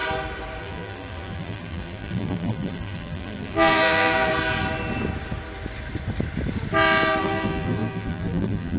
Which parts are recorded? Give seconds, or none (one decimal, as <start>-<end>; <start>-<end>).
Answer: 0.0-0.6; 4.3-7.2